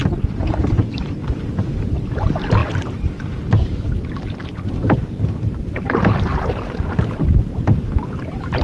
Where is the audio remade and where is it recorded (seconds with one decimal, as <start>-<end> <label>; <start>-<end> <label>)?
0.0-0.7 recorded; 0.7-1.2 remade; 1.2-1.7 recorded; 1.7-2.6 remade; 2.6-4.7 recorded; 4.7-8.6 remade